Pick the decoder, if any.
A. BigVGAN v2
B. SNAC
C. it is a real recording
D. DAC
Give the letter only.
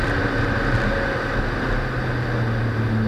C